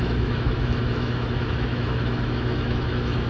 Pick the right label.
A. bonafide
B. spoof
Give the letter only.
B